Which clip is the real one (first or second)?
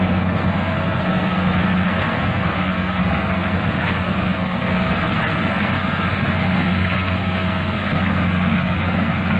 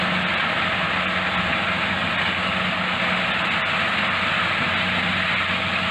second